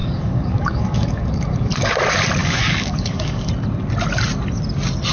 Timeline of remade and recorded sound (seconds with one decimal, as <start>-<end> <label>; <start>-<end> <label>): 0.0-1.9 remade; 1.9-2.4 recorded; 2.4-3.5 remade; 3.5-5.1 recorded